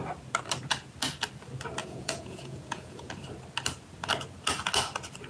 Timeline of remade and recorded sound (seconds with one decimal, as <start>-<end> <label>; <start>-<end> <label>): 0.0-1.8 recorded; 1.8-3.1 remade; 3.1-5.3 recorded